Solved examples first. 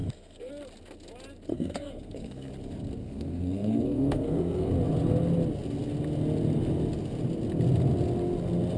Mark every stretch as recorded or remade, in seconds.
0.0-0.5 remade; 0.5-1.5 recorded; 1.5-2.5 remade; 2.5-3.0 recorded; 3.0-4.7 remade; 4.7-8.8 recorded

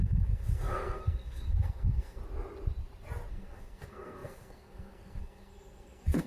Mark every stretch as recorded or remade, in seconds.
0.0-2.2 remade; 2.2-3.3 recorded; 3.3-6.3 remade

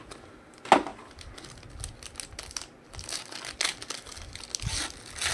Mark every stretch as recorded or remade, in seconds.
0.0-5.3 recorded

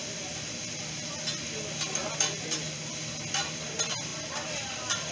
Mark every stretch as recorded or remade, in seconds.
0.0-3.1 recorded; 3.1-5.1 remade

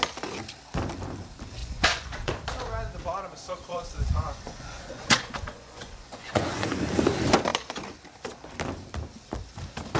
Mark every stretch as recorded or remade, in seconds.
0.0-1.6 recorded; 1.6-2.3 remade; 2.3-3.7 recorded; 3.7-6.8 remade; 6.8-10.0 recorded

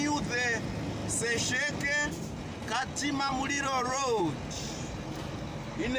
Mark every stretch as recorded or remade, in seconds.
0.0-6.0 recorded